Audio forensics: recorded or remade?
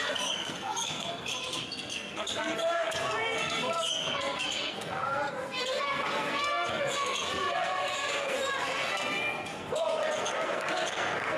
remade